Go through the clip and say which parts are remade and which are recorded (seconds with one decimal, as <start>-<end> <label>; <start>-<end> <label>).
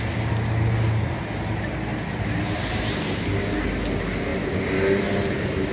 0.0-5.7 recorded